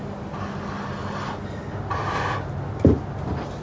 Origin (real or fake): real